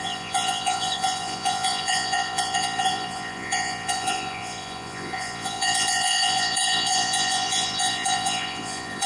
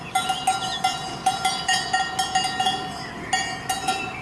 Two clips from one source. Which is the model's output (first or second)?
first